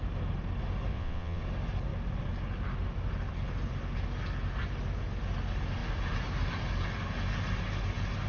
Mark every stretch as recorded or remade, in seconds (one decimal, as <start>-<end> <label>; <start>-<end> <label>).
0.0-0.9 recorded; 0.9-1.4 remade; 1.4-8.3 recorded